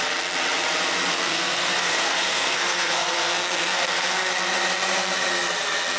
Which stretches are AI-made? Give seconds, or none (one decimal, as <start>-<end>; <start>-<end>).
1.1-4.3